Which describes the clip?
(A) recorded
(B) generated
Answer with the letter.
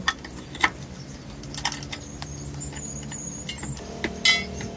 A